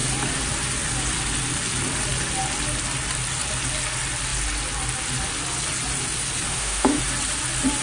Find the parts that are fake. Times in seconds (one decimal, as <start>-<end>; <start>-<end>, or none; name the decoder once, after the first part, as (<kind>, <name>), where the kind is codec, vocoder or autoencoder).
6.5-7.0 (autoencoder, DAC-VAE)